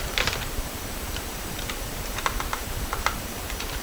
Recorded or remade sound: remade